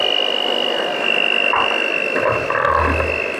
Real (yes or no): yes